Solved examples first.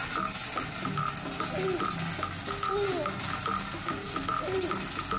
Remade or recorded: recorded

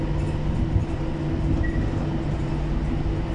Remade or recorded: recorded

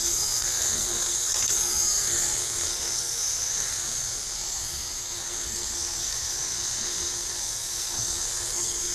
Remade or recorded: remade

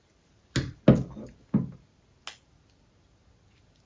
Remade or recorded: recorded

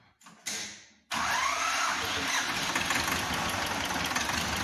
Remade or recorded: recorded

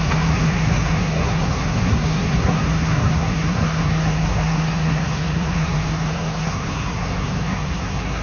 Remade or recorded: remade